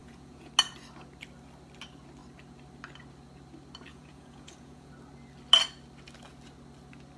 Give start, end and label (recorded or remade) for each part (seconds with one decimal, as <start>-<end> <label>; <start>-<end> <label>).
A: 0.0-0.5 remade; 0.5-3.9 recorded; 3.9-4.9 remade; 4.9-7.2 recorded